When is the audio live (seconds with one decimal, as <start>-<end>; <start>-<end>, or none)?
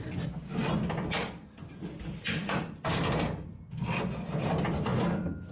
0.0-5.5